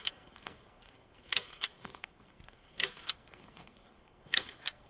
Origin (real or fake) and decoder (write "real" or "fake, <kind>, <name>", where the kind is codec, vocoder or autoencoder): fake, codec, SNAC